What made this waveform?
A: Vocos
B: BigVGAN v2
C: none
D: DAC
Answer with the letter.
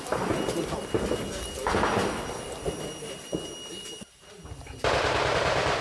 C